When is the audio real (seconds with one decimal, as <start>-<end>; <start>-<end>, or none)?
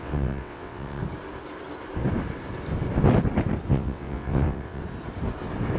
1.0-3.7; 4.8-5.8